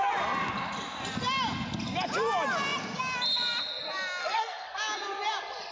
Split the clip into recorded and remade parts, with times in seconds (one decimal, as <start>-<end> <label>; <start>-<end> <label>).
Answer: 0.0-4.2 recorded; 4.2-4.8 remade; 4.8-5.7 recorded